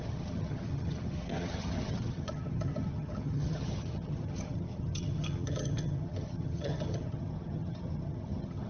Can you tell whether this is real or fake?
fake